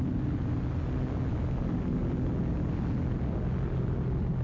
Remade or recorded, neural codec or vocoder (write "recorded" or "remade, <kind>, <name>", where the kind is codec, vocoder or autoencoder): recorded